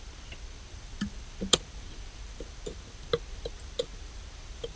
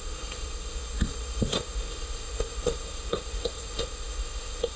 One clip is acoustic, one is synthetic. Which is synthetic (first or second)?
second